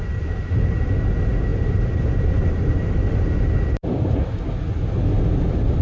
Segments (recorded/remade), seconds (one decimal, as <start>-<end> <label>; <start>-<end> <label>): 0.0-5.8 recorded